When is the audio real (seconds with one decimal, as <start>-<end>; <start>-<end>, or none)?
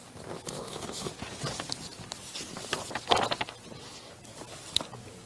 0.0-0.6; 1.1-5.3